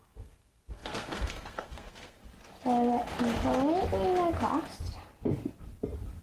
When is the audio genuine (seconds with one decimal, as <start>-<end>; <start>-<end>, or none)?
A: 2.2-6.2